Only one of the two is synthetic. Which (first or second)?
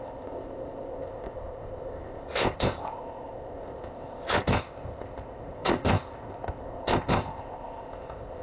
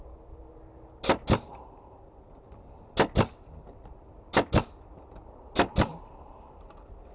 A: first